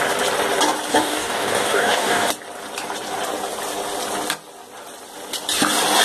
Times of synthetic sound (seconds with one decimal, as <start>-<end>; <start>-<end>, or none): 0.9-2.3